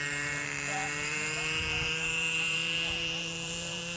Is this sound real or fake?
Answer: fake